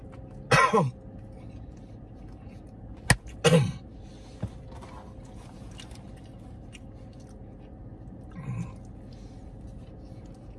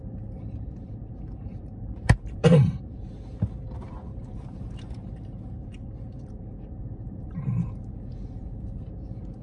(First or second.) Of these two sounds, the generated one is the second